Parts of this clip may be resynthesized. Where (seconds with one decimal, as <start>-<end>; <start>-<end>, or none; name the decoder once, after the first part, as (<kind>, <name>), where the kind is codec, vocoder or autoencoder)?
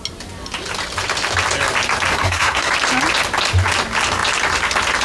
2.1-2.7 (codec, SNAC)